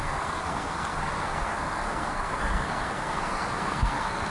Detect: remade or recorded remade